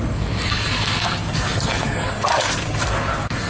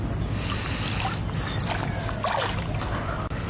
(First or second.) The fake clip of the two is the first